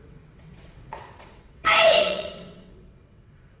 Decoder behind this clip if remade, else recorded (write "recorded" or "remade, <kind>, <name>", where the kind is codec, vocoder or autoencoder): remade, vocoder, WaveNeXt